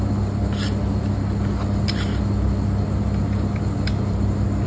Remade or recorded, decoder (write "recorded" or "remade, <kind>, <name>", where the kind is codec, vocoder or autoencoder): recorded